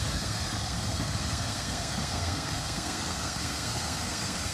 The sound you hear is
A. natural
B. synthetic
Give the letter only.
B